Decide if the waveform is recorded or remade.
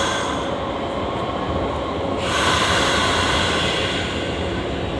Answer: recorded